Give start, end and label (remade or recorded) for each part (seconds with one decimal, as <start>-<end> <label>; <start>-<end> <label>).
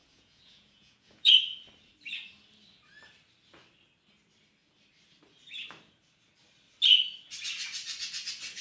0.0-1.3 remade; 1.3-8.6 recorded